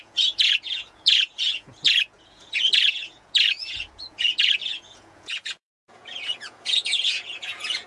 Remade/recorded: remade